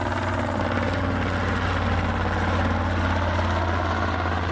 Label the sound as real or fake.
real